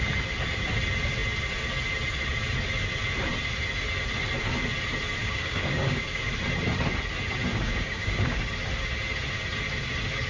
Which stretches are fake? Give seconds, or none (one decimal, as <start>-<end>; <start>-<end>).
5.2-6.3; 7.5-8.4